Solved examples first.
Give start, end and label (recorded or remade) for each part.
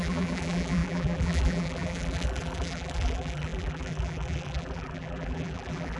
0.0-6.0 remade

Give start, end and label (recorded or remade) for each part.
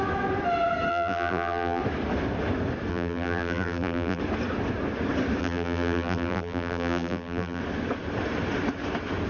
0.0-0.9 recorded; 0.9-1.8 remade; 1.8-2.9 recorded; 2.9-4.2 remade; 4.2-5.4 recorded; 5.4-7.6 remade; 7.6-9.3 recorded